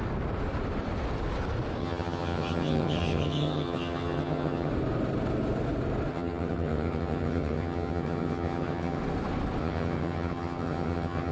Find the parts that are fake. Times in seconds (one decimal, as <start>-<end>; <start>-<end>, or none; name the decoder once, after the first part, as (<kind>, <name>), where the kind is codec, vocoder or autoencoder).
1.8-4.7 (vocoder, HiFi-GAN); 6.1-9.0; 9.6-11.3